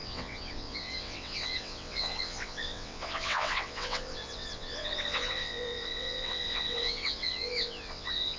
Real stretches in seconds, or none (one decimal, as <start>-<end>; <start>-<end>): none